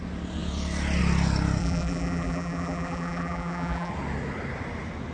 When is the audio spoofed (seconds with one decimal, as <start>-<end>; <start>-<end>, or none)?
1.6-3.9